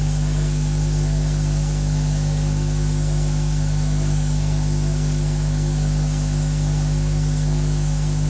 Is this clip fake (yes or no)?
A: yes